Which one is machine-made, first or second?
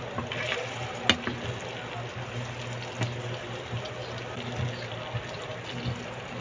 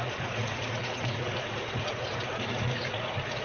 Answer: second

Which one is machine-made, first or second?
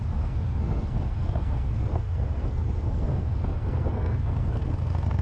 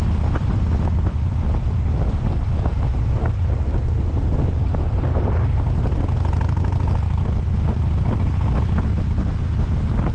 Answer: first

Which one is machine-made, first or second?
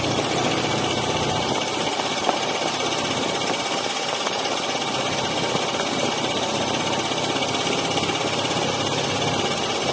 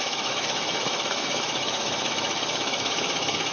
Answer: second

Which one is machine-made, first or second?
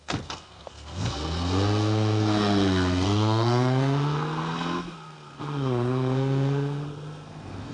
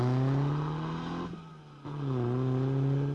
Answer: first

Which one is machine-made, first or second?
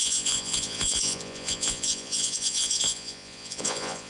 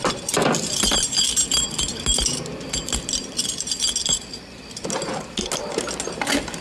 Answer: first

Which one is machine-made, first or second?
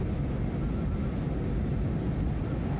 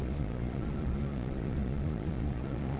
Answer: second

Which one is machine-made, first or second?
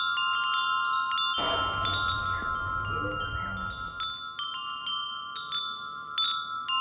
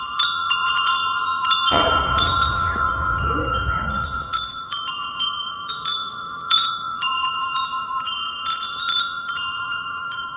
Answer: second